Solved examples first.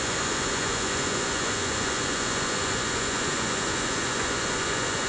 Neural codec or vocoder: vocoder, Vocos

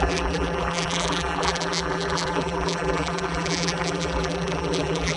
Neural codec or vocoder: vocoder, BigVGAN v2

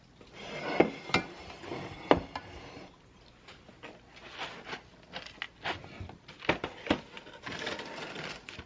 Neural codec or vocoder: none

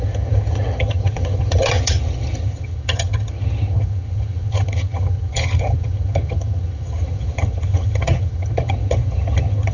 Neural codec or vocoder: vocoder, HiFi-GAN